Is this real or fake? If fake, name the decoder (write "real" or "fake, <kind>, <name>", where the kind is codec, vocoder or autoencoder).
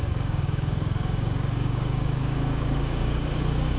fake, codec, DAC